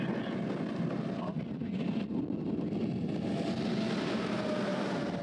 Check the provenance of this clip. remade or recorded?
recorded